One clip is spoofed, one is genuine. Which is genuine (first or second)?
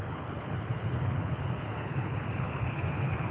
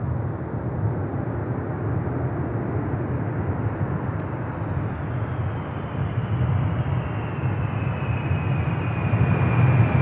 second